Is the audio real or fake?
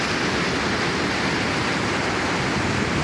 real